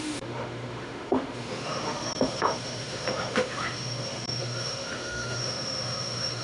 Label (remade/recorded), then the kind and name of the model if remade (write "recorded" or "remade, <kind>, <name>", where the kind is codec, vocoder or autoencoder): remade, autoencoder, DAC-VAE